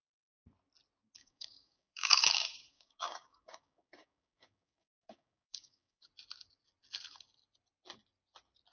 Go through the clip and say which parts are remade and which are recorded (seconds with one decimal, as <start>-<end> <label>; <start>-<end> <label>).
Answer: 0.0-1.2 recorded; 1.2-6.1 remade; 6.1-8.7 recorded